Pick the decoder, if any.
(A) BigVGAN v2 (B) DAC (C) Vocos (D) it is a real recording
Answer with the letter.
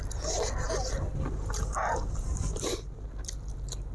D